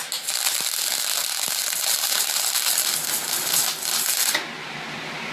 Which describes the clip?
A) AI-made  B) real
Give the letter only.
B